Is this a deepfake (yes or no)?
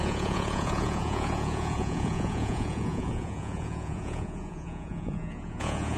yes